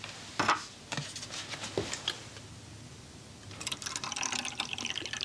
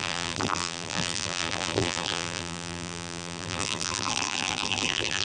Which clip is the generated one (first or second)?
second